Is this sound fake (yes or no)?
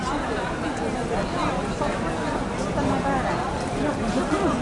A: no